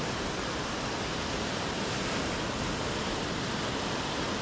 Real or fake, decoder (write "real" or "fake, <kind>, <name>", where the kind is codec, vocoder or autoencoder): real